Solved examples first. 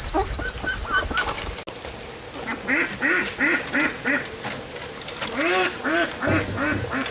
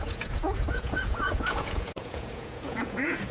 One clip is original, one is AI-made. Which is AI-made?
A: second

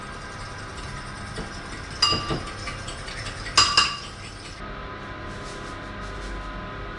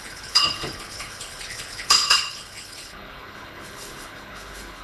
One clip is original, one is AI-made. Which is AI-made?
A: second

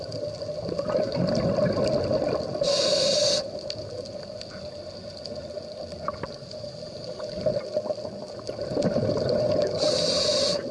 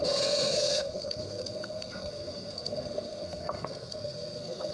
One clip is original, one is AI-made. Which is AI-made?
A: second